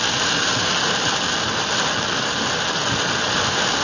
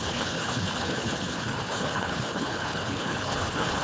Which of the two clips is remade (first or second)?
second